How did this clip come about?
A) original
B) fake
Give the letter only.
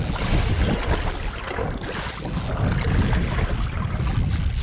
A